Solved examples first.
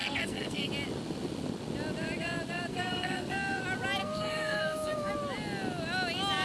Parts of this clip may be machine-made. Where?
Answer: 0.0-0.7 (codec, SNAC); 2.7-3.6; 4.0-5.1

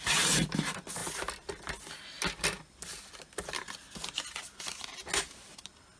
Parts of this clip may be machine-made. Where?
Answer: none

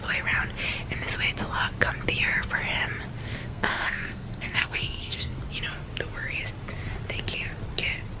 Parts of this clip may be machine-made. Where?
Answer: 3.2-5.4 (codec, SNAC)

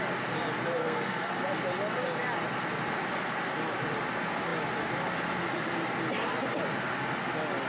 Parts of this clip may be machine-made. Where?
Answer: 0.8-1.3 (codec, SNAC)

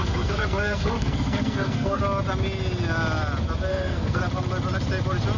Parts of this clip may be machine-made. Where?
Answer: 0.0-2.0 (codec, SNAC); 3.7-4.2